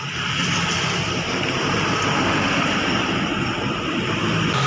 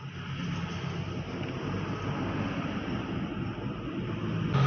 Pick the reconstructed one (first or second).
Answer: first